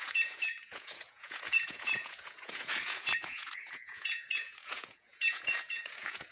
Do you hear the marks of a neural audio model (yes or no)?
yes